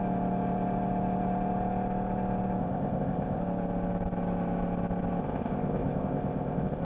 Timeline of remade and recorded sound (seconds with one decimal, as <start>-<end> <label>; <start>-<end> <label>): 0.0-2.6 recorded; 2.6-3.4 remade; 3.4-5.2 recorded; 5.2-6.8 remade